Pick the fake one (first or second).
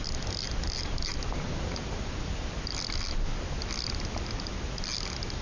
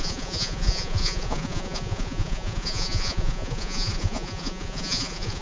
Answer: second